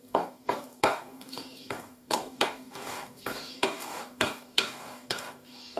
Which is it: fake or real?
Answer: fake